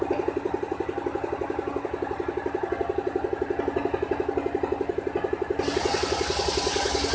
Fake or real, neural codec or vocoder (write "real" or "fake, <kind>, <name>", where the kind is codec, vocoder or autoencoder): real